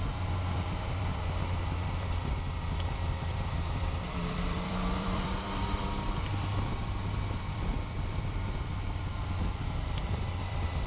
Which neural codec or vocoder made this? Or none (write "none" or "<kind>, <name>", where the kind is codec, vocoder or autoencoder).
vocoder, BigVGAN v2